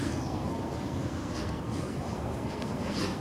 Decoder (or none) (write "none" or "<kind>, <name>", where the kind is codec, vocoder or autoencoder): codec, SNAC